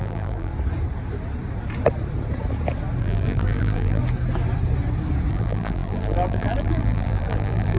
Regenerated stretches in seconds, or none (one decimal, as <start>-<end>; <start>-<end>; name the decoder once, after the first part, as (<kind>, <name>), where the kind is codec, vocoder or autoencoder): 0.0-0.5 (vocoder, BigVGAN v2); 3.0-4.0; 5.3-7.8